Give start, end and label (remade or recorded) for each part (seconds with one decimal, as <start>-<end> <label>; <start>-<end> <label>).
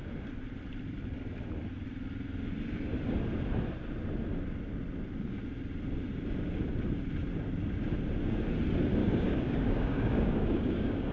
0.0-9.0 recorded; 9.0-11.1 remade